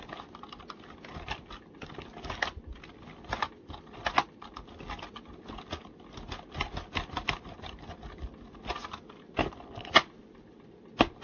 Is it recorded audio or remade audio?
recorded